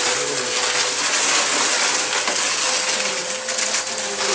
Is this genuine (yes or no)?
yes